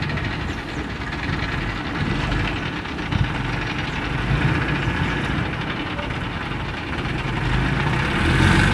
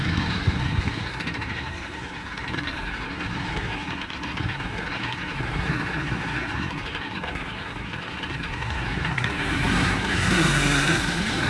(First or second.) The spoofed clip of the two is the second